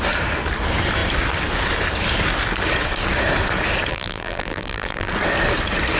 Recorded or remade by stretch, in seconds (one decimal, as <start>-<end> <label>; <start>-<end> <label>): 0.0-3.9 recorded; 3.9-5.1 remade; 5.1-6.0 recorded